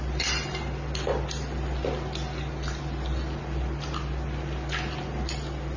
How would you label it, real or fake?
real